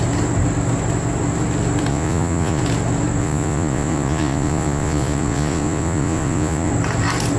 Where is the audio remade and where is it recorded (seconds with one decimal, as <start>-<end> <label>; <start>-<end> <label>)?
0.0-1.9 recorded; 1.9-2.6 remade; 2.6-3.2 recorded; 3.2-6.7 remade; 6.7-7.4 recorded